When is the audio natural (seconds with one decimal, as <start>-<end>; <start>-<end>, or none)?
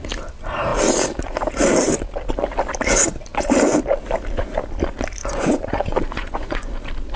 0.0-5.2; 6.7-7.2